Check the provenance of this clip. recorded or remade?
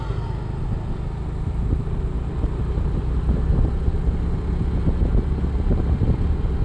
recorded